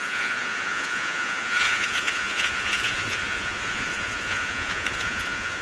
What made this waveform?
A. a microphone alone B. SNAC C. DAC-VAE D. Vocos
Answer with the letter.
D